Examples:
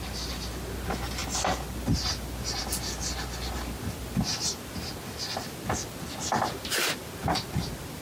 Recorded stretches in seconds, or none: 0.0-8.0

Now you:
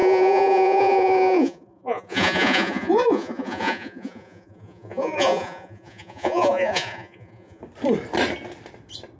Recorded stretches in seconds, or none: 7.6-9.2

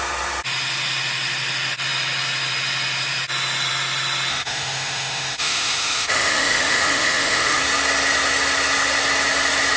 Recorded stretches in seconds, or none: 0.0-4.3; 7.6-9.8

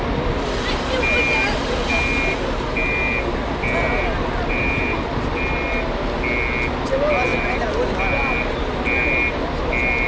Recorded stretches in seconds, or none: 0.0-10.1

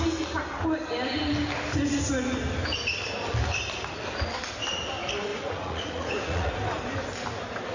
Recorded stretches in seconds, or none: 0.0-5.3; 6.5-7.7

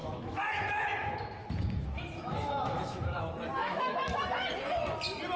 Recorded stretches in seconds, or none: 3.2-3.6; 4.2-5.4

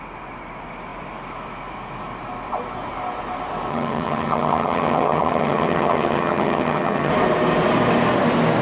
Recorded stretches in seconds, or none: 0.0-3.7; 7.1-8.6

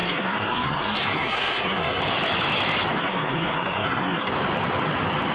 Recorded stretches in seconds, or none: 2.0-3.0; 4.3-5.3